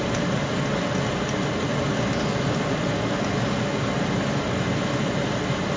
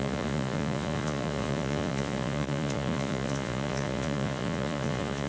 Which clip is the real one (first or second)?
first